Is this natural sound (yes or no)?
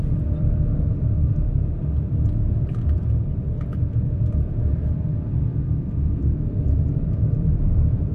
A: no